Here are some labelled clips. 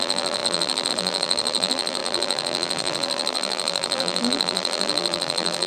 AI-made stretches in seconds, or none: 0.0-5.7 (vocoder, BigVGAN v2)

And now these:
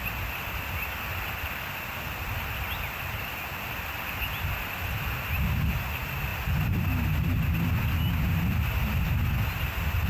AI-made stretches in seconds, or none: none

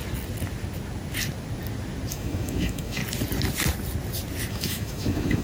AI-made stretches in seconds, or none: 2.1-3.0 (autoencoder, DAC-VAE); 4.5-5.4

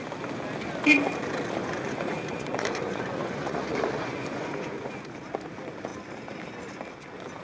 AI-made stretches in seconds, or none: 1.6-5.1 (vocoder, Vocos)

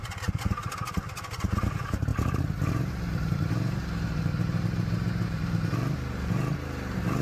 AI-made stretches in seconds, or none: 0.0-0.6 (vocoder, BigVGAN v2); 1.3-2.1; 2.7-7.2